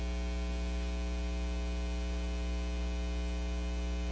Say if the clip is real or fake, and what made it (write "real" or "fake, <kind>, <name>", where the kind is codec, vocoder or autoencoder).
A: real